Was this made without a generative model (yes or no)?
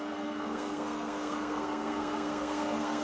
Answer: no